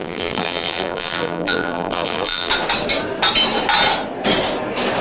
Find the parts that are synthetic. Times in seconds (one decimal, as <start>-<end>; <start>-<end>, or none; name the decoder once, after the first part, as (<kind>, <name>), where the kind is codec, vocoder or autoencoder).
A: 0.0-2.5 (vocoder, BigVGAN v2)